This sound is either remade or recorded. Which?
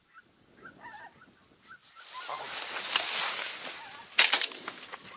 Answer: recorded